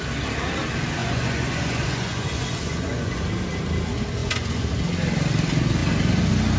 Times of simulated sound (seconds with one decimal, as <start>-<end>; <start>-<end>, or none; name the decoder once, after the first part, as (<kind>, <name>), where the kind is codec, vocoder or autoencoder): 1.0-3.2 (vocoder, Vocos); 4.2-4.7